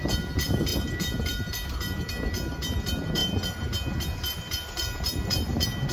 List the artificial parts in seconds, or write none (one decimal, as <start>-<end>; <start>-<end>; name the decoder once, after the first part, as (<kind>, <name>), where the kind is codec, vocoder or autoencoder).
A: none